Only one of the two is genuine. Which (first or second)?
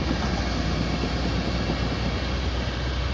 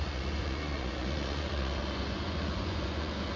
first